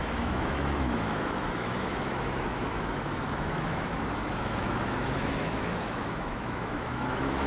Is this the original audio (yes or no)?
no